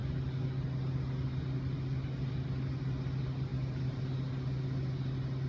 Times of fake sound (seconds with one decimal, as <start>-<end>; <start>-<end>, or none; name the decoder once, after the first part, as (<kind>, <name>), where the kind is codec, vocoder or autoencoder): 3.5-4.0 (vocoder, BigVGAN v2)